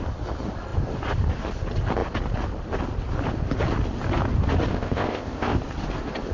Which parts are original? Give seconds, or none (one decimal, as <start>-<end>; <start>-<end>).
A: 0.0-4.7; 5.6-6.3